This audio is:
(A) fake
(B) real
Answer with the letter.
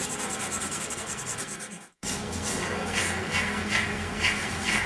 A